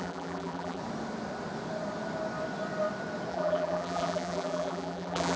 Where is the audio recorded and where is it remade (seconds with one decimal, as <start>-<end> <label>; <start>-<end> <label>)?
0.0-0.8 remade; 0.8-3.3 recorded; 3.3-5.4 remade